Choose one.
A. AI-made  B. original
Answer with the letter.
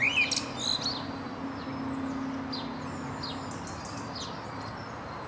B